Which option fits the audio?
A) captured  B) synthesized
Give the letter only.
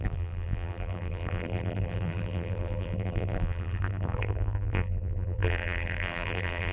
B